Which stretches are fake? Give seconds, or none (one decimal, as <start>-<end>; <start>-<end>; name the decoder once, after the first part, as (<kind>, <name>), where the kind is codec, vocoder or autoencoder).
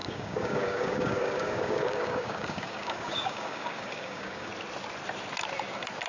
0.0-4.5 (codec, DAC)